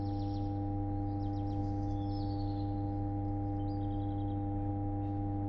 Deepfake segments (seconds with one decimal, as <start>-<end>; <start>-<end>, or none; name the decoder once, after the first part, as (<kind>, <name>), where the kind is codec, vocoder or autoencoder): none